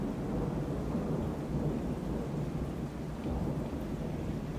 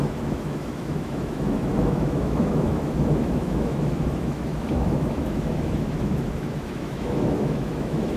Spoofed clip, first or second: second